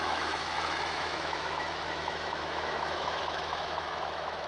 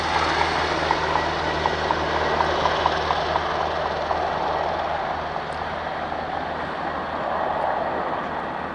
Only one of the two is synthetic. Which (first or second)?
first